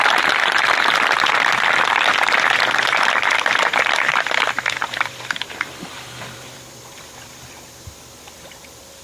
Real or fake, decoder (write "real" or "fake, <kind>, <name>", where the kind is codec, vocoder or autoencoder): fake, vocoder, BigVGAN v2